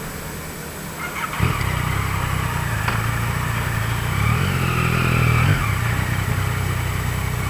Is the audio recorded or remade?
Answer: recorded